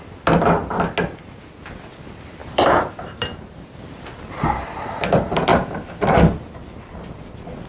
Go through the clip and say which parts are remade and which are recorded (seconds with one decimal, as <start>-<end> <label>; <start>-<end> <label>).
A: 0.0-2.4 recorded; 2.4-4.0 remade; 4.0-5.5 recorded; 5.5-6.4 remade; 6.4-7.7 recorded